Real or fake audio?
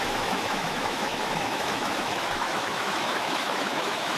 fake